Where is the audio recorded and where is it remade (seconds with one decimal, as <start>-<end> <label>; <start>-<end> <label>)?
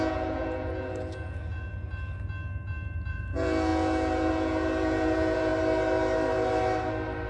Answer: 0.0-1.7 remade; 1.7-3.1 recorded; 3.1-5.5 remade; 5.5-7.3 recorded